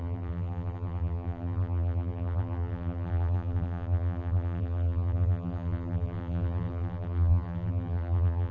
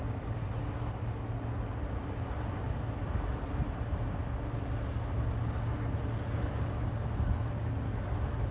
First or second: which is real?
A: second